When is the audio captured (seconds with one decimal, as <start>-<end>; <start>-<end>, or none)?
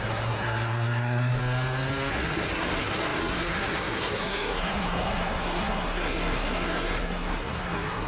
1.4-2.1